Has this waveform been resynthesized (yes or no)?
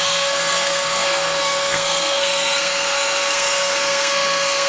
yes